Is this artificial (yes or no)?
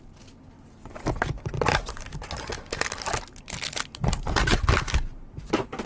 no